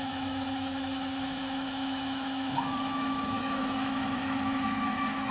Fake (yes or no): yes